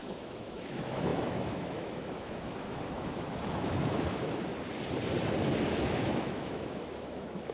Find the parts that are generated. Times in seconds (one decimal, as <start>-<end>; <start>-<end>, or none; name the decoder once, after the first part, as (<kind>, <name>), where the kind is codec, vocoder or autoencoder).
0.0-4.5 (autoencoder, DAC-VAE); 5.8-7.5